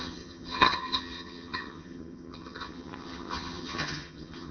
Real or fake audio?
fake